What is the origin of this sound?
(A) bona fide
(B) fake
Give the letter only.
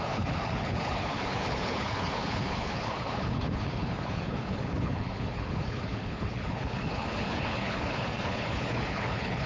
B